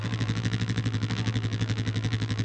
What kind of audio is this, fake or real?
fake